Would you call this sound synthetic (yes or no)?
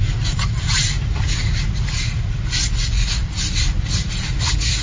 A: no